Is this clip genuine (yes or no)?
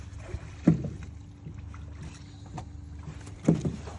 yes